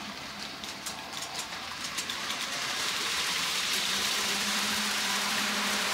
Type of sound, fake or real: fake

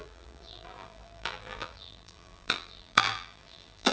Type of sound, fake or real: fake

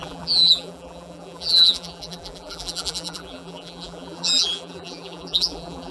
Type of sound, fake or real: fake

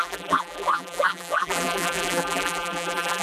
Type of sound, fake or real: fake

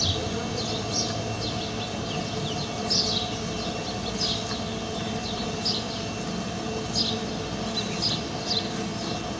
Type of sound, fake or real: real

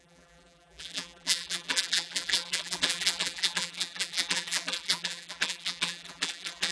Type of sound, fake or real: fake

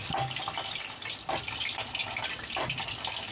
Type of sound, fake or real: real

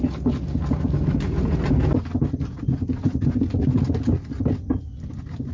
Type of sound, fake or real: real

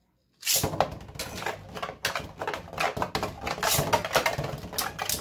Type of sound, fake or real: real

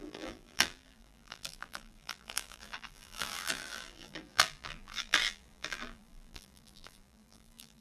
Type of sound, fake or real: fake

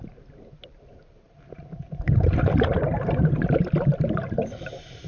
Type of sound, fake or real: fake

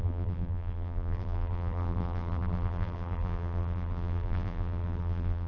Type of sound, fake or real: fake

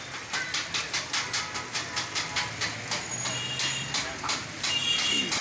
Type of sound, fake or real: real